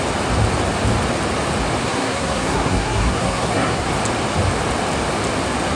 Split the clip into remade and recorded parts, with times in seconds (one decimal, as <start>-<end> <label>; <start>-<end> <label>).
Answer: 0.0-1.8 recorded; 1.8-3.9 remade; 3.9-5.8 recorded